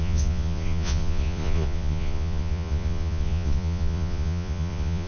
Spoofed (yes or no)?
yes